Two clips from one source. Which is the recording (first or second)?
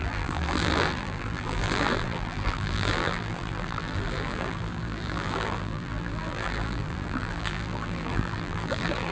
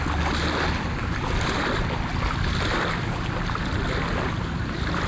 second